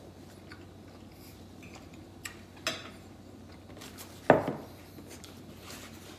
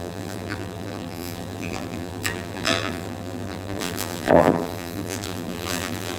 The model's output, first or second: second